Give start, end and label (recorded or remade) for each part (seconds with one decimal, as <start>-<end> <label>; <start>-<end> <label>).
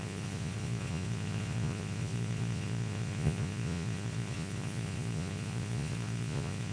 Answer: 0.0-6.7 remade